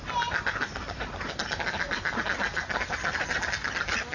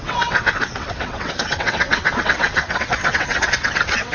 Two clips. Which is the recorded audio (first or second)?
first